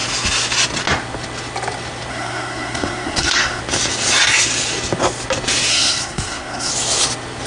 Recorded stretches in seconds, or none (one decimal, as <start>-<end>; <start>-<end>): 0.0-2.1; 3.6-5.7; 6.7-7.5